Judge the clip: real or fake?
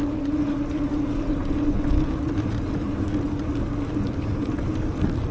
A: real